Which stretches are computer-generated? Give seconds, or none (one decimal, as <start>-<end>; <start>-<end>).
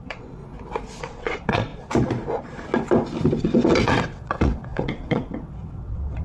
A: 0.0-0.4; 1.0-1.7; 3.4-6.2